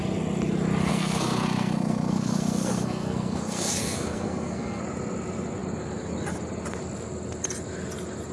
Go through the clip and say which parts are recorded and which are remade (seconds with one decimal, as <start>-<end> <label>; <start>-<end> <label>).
0.0-0.9 recorded; 0.9-4.8 remade; 4.8-8.3 recorded